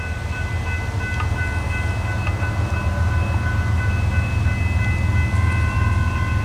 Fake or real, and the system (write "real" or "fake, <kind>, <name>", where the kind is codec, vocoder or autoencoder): real